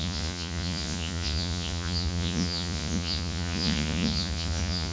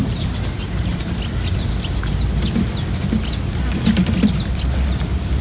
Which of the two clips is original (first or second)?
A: second